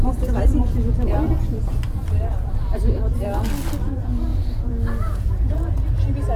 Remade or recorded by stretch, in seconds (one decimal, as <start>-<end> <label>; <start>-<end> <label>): 0.0-4.3 recorded; 4.3-5.7 remade; 5.7-6.4 recorded